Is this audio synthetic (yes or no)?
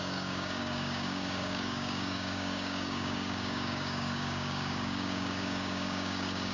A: yes